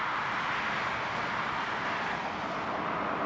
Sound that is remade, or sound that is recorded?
recorded